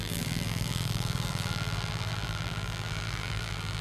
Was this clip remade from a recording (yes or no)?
yes